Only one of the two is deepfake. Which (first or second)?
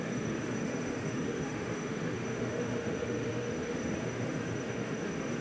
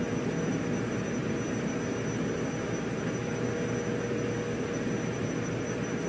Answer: first